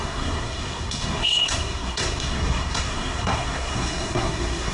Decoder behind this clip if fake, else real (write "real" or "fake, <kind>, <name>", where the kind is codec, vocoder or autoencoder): fake, codec, SNAC